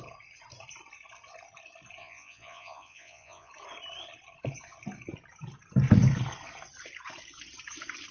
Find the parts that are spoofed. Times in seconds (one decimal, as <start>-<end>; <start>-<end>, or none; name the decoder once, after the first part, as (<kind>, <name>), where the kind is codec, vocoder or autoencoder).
2.0-3.5 (vocoder, Vocos)